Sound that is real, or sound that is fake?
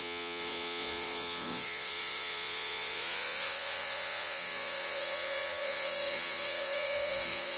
fake